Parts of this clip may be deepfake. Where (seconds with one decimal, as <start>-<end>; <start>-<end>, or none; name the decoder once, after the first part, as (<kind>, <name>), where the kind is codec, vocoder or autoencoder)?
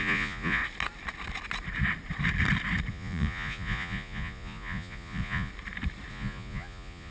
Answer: 0.0-0.6 (vocoder, Vocos); 2.9-5.5; 6.1-7.1